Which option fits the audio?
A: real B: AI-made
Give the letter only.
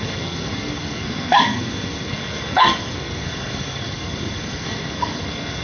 B